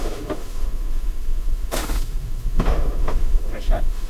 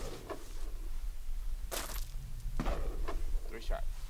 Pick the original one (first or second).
second